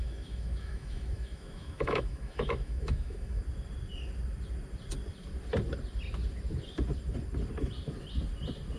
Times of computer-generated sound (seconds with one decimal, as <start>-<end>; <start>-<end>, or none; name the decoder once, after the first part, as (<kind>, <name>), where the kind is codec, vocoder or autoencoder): 0.0-3.4 (autoencoder, DAC-VAE)